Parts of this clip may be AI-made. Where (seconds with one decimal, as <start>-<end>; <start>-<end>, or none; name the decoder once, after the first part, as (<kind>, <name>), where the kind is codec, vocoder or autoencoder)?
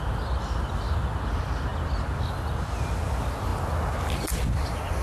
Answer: none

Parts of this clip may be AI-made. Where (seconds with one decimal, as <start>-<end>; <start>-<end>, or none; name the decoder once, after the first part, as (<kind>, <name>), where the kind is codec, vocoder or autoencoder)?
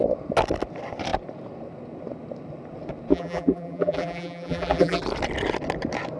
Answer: 3.1-5.0 (vocoder, BigVGAN v2)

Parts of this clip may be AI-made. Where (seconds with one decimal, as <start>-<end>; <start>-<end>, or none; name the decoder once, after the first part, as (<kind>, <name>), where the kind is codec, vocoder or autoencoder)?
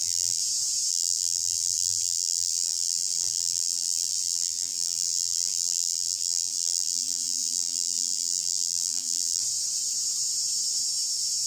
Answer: 0.0-0.4 (vocoder, BigVGAN v2); 0.9-9.4